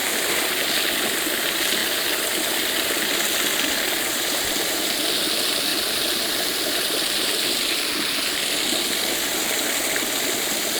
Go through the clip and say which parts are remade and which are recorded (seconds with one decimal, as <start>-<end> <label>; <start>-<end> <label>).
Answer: 0.0-1.3 remade; 1.3-1.8 recorded; 1.8-3.6 remade; 3.6-10.8 recorded